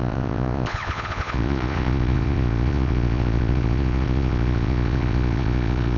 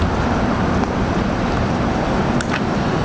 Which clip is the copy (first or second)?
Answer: first